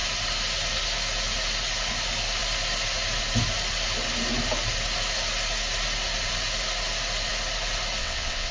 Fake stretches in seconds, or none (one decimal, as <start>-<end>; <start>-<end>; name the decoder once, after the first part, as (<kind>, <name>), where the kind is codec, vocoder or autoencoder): 8.0-8.5 (vocoder, WaveNeXt)